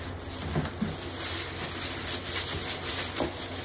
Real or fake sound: real